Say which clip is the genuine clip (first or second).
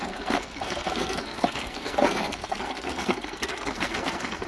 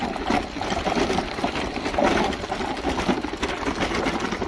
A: second